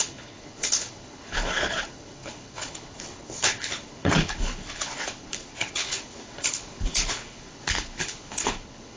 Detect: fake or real fake